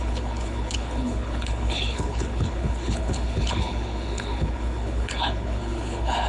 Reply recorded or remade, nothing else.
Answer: remade